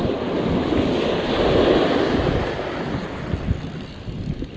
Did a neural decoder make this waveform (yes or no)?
no